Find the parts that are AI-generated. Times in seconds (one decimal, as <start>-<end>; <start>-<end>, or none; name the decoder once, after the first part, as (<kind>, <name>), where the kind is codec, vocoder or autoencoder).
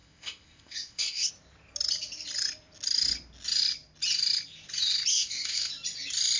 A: 0.0-1.3 (codec, ZipCodec); 5.1-5.7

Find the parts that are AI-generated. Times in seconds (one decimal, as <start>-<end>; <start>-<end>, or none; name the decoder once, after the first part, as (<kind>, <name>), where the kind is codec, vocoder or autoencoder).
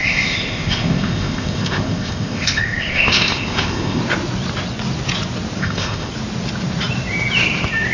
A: 0.0-4.0 (codec, ZipCodec); 5.6-6.1